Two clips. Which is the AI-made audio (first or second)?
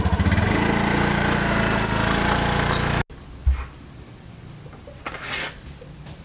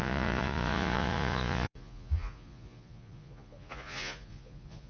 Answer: second